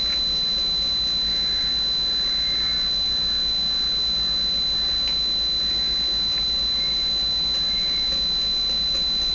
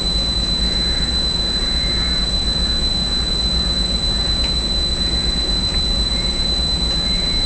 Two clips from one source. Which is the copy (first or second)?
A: second